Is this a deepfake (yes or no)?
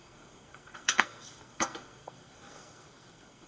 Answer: yes